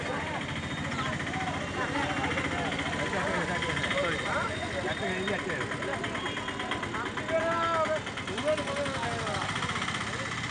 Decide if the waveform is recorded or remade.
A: recorded